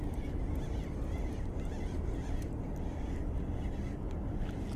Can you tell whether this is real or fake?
real